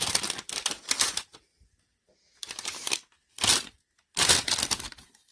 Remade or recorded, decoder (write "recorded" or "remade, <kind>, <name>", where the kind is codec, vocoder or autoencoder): remade, vocoder, BigVGAN v2